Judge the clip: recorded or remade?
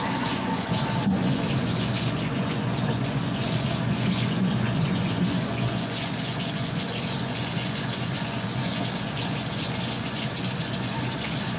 remade